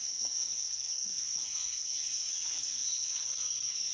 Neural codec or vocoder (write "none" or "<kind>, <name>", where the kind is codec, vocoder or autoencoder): codec, SNAC